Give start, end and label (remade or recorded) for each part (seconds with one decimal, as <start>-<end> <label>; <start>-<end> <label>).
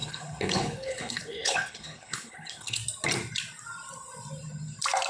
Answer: 0.0-2.8 remade; 2.8-5.1 recorded